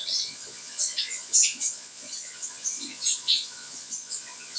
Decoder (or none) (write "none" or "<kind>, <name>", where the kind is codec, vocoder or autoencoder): vocoder, Vocos